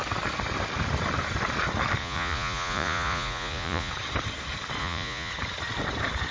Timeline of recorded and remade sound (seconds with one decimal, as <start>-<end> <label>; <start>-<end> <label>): 0.0-2.0 recorded; 2.0-3.9 remade; 3.9-4.8 recorded; 4.8-5.3 remade; 5.3-6.3 recorded